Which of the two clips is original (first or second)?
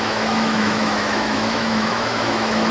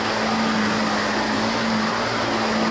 second